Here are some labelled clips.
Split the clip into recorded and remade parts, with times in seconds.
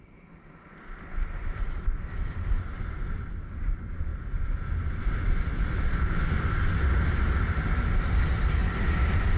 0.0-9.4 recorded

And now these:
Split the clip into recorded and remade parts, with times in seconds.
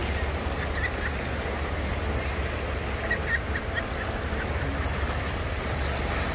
0.0-6.3 recorded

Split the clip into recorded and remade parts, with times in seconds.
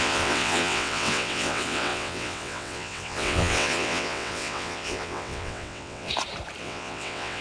0.0-6.1 remade; 6.1-6.6 recorded; 6.6-7.4 remade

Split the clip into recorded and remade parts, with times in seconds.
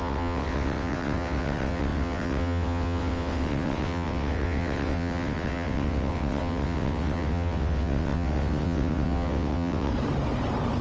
0.0-9.9 remade; 9.9-10.8 recorded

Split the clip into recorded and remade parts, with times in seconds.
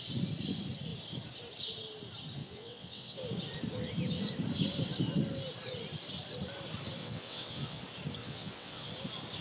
0.0-2.4 recorded; 2.4-3.2 remade; 3.2-7.0 recorded; 7.0-7.8 remade; 7.8-8.2 recorded; 8.2-8.9 remade; 8.9-9.4 recorded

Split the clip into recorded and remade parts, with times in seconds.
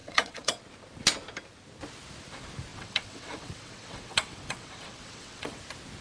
0.0-0.6 remade; 0.6-2.7 recorded; 2.7-5.6 remade; 5.6-6.0 recorded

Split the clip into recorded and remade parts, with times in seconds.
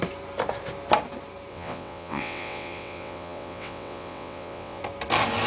0.0-1.5 recorded; 1.5-4.8 remade; 4.8-5.5 recorded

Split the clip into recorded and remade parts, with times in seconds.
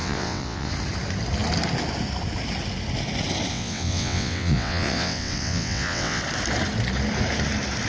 0.0-0.7 remade; 0.7-3.5 recorded; 3.5-6.2 remade; 6.2-7.9 recorded